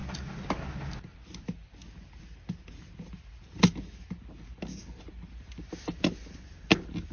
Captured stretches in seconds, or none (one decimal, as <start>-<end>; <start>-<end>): 0.0-7.1